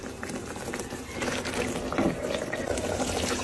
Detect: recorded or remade recorded